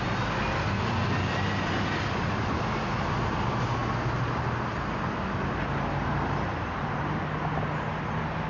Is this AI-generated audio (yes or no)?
no